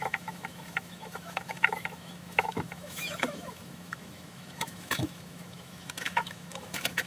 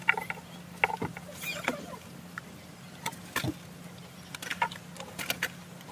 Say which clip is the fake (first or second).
first